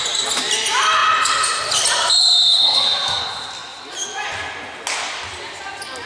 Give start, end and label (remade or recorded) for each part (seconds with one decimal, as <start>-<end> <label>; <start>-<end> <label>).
0.0-2.5 recorded; 2.5-3.2 remade; 3.2-6.1 recorded